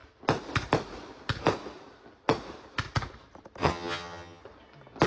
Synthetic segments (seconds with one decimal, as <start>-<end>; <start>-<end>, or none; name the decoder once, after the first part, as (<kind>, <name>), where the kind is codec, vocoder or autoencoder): 3.6-4.4 (vocoder, HiFi-GAN)